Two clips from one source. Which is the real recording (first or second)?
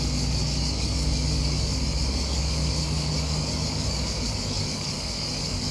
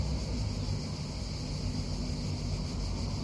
second